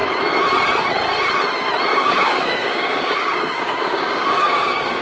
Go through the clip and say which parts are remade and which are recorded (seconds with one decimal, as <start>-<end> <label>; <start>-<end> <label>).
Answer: 0.0-1.9 recorded; 1.9-5.0 remade